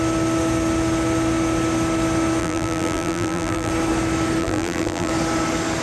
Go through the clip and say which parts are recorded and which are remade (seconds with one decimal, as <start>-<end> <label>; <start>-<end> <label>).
0.0-2.4 recorded; 2.4-3.7 remade; 3.7-4.4 recorded; 4.4-5.1 remade; 5.1-5.8 recorded